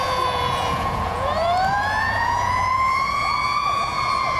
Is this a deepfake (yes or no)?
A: yes